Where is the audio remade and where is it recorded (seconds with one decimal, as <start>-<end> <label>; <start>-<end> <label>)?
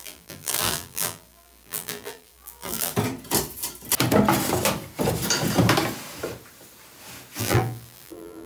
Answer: 0.0-2.9 remade; 2.9-7.4 recorded; 7.4-8.5 remade